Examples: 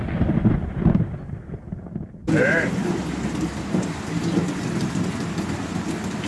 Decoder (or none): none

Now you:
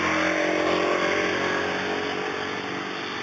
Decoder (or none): none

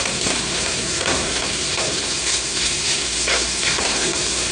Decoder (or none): codec, SNAC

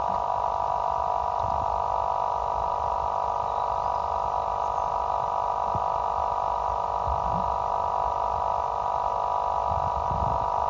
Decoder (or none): none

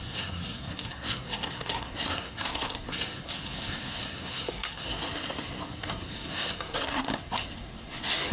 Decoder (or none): codec, SNAC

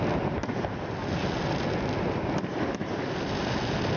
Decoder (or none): none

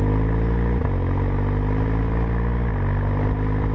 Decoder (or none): none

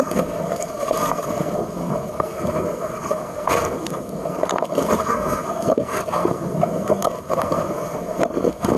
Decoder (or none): codec, SNAC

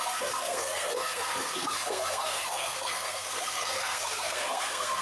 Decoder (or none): codec, SNAC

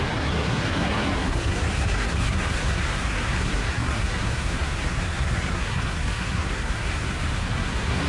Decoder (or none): codec, SNAC